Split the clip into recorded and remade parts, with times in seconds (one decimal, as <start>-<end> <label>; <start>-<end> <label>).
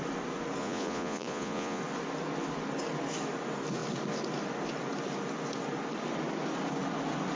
0.0-0.6 recorded; 0.6-1.8 remade; 1.8-7.4 recorded